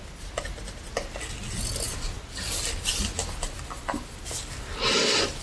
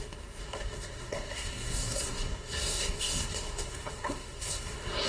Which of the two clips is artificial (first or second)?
second